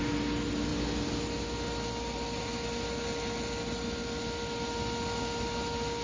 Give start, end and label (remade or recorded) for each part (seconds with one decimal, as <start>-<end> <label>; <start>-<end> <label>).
0.0-6.0 recorded